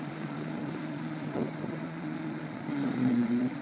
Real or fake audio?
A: fake